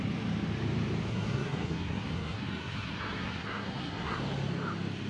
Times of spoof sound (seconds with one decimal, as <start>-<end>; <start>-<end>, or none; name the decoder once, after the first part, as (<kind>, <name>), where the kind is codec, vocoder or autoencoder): 1.1-4.2 (codec, SNAC)